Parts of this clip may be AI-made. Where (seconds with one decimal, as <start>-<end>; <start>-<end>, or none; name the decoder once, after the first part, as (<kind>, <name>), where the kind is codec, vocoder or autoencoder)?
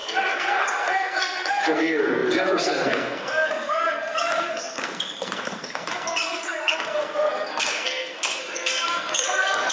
0.0-9.7 (codec, SNAC)